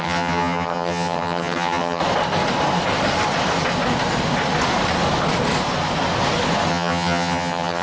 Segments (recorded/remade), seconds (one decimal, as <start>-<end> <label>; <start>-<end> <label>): 0.0-2.0 remade; 2.0-6.7 recorded; 6.7-7.8 remade

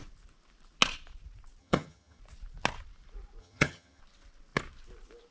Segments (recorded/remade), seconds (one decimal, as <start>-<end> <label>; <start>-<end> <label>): 0.0-1.6 recorded; 1.6-2.2 remade; 2.2-3.4 recorded; 3.4-4.0 remade; 4.0-5.3 recorded

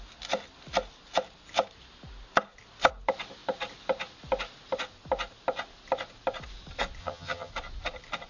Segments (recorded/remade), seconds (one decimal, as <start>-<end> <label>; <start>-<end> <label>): 0.0-7.0 recorded; 7.0-7.5 remade; 7.5-8.3 recorded

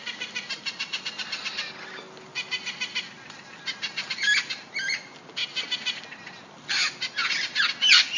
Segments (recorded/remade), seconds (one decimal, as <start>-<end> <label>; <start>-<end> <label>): 0.0-8.2 recorded

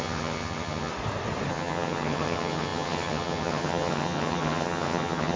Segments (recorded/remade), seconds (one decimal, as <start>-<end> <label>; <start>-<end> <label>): 0.0-0.9 remade; 0.9-1.5 recorded; 1.5-5.4 remade

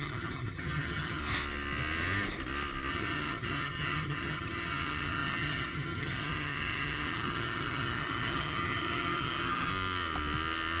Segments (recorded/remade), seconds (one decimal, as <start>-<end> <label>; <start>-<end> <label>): 0.0-1.2 remade; 1.2-2.9 recorded; 2.9-9.7 remade; 9.7-10.8 recorded

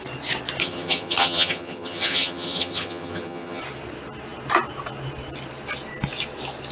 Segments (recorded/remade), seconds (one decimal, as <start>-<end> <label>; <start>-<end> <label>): 0.0-0.6 recorded; 0.6-3.6 remade; 3.6-6.7 recorded

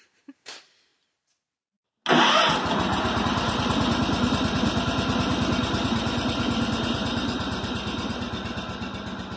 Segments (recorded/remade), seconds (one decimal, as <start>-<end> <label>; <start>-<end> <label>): 0.0-9.4 recorded